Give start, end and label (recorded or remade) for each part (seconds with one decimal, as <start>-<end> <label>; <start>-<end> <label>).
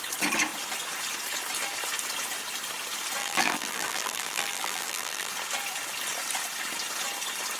0.0-3.2 recorded; 3.2-5.3 remade; 5.3-7.6 recorded